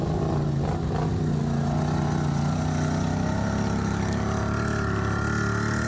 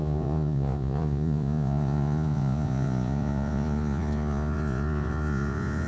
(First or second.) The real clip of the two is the first